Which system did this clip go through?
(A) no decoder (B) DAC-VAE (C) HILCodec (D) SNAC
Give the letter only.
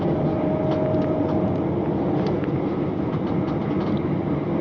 A